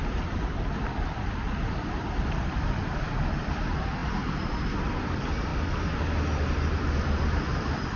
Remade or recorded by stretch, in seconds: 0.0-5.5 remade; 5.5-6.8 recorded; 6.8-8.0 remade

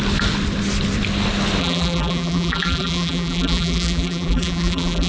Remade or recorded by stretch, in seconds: 0.0-1.6 recorded; 1.6-5.1 remade

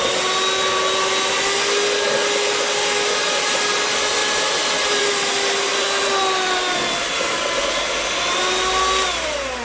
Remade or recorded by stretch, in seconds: 0.0-9.6 recorded

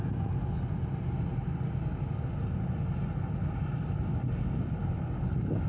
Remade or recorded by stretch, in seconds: 0.0-5.7 recorded